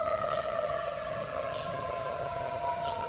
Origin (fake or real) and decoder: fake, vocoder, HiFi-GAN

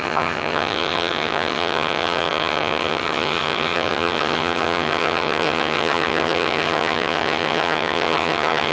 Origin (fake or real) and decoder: fake, vocoder, HiFi-GAN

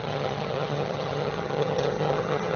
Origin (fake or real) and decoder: fake, vocoder, HiFi-GAN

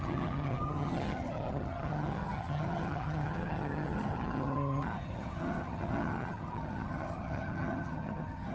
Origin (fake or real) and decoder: fake, vocoder, HiFi-GAN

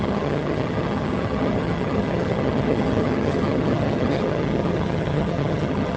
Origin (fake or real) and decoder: fake, vocoder, HiFi-GAN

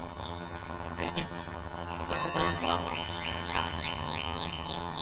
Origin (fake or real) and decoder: fake, vocoder, HiFi-GAN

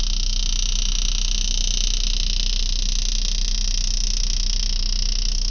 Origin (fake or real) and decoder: real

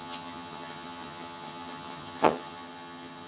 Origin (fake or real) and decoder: fake, vocoder, HiFi-GAN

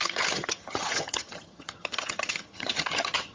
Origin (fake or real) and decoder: fake, vocoder, HiFi-GAN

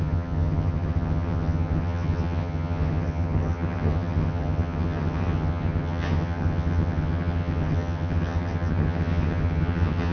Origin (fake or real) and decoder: fake, vocoder, HiFi-GAN